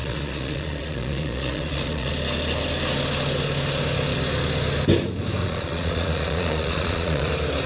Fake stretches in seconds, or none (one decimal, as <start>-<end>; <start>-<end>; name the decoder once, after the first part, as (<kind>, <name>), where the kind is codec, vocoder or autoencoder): 0.0-2.1 (vocoder, Vocos); 5.4-7.3